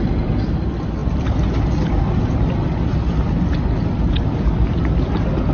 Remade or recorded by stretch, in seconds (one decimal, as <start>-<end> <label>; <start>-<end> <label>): 0.0-5.5 recorded